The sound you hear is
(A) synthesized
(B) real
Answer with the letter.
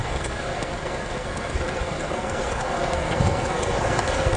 A